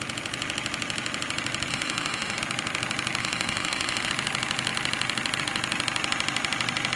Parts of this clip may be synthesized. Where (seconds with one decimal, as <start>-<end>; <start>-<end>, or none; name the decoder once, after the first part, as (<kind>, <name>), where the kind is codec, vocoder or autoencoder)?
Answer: 1.7-2.4 (autoencoder, DAC-VAE); 3.2-4.1